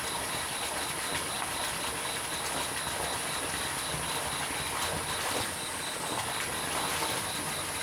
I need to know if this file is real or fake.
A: real